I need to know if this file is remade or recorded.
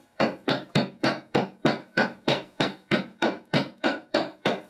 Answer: remade